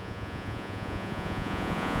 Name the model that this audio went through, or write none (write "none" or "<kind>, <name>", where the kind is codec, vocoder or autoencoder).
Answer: vocoder, Vocos